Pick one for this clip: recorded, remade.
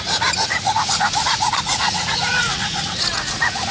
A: remade